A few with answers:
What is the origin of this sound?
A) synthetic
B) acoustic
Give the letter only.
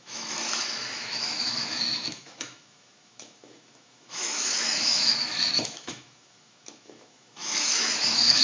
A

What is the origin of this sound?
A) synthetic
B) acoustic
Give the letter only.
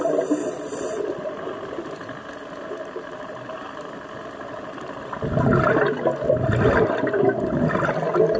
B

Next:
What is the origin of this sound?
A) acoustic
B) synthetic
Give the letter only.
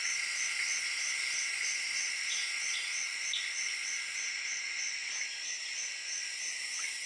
A